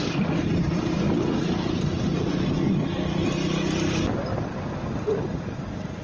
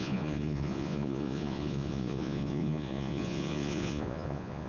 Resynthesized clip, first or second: second